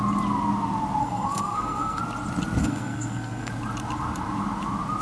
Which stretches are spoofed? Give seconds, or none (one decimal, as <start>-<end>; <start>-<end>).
1.0-2.0; 2.6-3.5